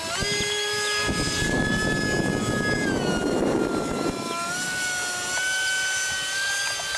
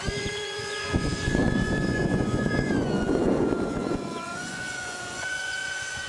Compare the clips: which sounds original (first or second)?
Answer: first